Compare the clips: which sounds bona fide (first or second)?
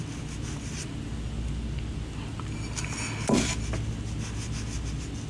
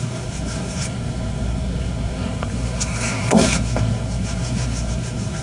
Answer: first